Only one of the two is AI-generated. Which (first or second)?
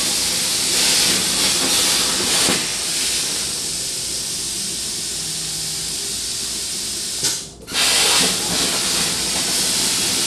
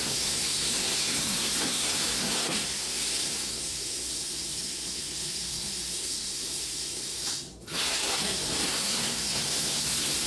second